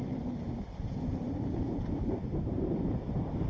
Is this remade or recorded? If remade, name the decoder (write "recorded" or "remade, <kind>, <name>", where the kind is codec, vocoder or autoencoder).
remade, vocoder, BigVGAN v2